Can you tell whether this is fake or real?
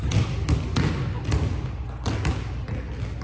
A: real